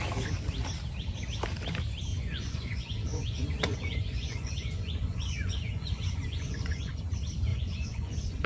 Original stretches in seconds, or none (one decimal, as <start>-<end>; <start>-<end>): 0.0-2.1; 7.0-7.5